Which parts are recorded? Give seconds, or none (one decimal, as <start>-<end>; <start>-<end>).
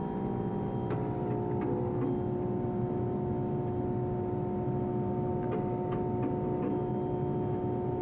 0.0-8.0